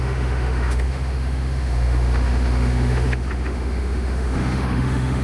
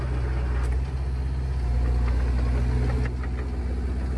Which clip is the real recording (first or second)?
second